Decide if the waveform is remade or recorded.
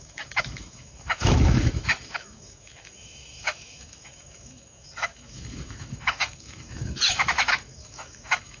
remade